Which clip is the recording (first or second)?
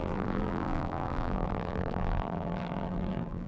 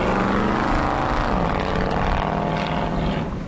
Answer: second